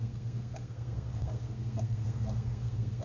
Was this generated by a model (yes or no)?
yes